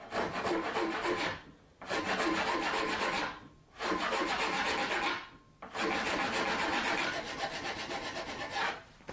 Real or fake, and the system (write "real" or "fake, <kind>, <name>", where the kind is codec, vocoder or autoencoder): real